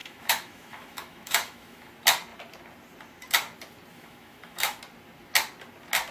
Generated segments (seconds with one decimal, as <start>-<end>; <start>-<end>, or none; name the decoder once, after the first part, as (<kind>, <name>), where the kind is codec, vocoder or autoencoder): 0.0-1.9 (autoencoder, DAC-VAE); 3.9-4.8